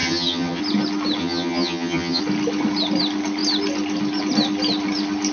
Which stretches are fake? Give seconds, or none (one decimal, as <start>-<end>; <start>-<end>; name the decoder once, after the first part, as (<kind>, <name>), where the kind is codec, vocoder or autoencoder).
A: 0.0-0.6 (vocoder, HiFi-GAN); 1.2-2.2